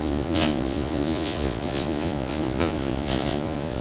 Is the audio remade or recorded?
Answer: remade